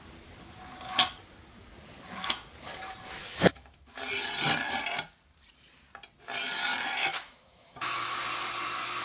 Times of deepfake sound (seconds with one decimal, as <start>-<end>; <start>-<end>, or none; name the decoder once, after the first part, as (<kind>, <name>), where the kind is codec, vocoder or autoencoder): 3.2-4.0 (autoencoder, DAC-VAE); 7.0-8.2